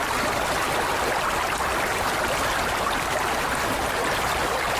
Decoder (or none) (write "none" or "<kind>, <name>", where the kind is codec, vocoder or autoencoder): none